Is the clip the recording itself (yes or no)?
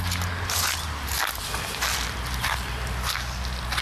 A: yes